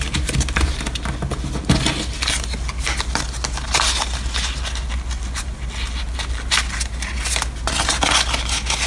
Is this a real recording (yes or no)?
yes